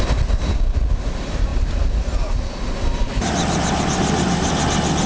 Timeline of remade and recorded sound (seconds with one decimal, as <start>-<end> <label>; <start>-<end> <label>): 0.0-5.1 recorded